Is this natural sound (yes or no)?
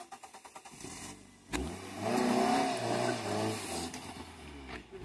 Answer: yes